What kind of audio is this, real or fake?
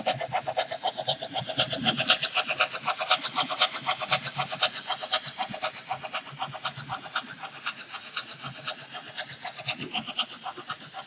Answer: fake